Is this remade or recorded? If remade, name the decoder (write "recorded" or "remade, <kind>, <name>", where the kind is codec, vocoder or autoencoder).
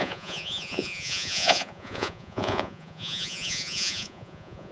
remade, vocoder, Vocos